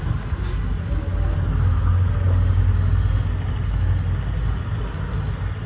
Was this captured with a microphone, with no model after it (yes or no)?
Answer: yes